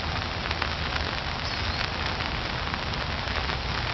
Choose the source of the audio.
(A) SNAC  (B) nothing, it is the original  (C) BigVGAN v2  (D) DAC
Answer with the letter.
B